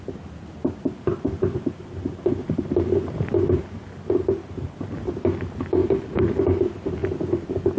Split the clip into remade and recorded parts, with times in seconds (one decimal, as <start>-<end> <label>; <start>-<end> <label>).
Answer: 0.0-5.8 recorded; 5.8-6.6 remade; 6.6-7.0 recorded; 7.0-7.8 remade